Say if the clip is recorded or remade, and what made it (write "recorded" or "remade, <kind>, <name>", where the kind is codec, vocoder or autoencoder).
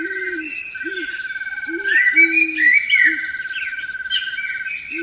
recorded